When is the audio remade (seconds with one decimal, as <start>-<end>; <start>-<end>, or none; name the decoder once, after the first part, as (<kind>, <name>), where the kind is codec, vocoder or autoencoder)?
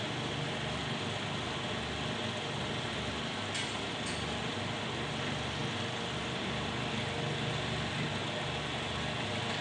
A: none